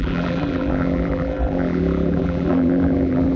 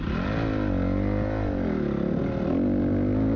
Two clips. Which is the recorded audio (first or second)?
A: second